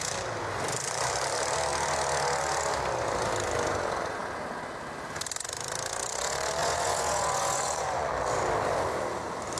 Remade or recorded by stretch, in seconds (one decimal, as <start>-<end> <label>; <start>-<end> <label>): 0.0-6.6 recorded; 6.6-8.1 remade; 8.1-9.6 recorded